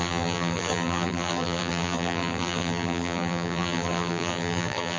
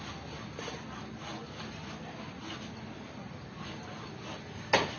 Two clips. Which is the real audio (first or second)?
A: second